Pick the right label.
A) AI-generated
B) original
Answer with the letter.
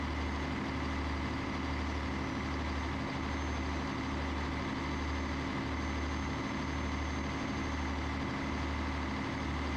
B